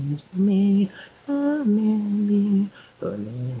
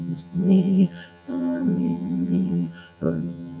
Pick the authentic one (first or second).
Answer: first